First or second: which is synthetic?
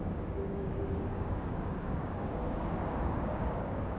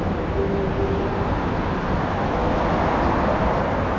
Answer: first